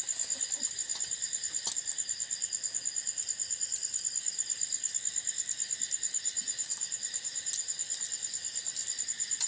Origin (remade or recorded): recorded